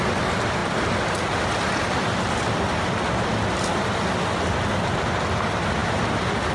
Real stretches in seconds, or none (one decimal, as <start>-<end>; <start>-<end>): 0.0-6.5